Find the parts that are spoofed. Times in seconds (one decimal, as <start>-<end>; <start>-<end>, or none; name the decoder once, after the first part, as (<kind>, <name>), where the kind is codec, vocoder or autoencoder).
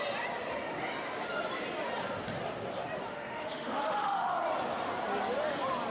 3.1-4.3 (autoencoder, DAC-VAE)